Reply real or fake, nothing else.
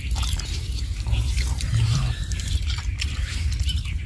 fake